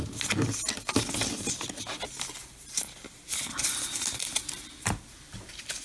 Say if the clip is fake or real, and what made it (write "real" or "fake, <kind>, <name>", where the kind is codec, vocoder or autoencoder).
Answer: real